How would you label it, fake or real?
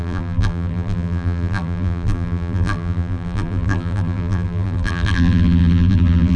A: fake